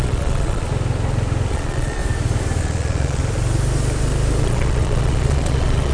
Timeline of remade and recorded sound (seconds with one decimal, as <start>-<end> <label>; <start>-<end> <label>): 0.0-0.7 remade; 0.7-1.5 recorded; 1.5-2.0 remade; 2.0-2.6 recorded; 2.6-3.2 remade; 3.2-4.4 recorded; 4.4-5.9 remade